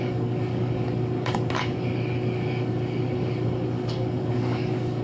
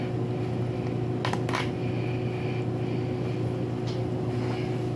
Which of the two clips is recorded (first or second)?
second